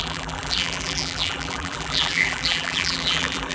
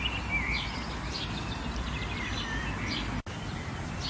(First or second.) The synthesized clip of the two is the first